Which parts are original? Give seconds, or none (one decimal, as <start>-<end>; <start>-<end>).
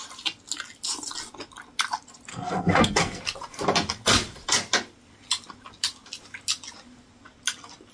0.0-2.3; 3.2-7.9